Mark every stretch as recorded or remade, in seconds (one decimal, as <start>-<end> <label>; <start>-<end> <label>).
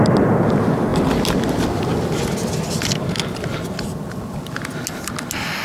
0.0-5.6 recorded